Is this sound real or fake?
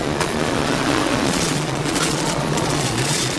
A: fake